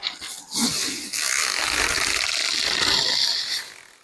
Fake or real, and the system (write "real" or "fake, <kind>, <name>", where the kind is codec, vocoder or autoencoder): real